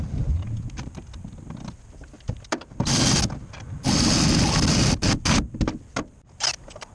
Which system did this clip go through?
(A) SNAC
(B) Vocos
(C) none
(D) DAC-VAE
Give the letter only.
C